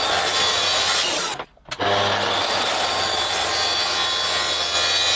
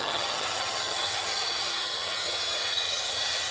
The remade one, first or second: second